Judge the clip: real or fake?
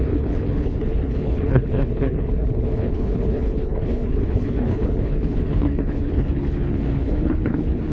fake